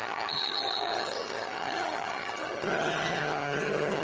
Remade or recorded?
remade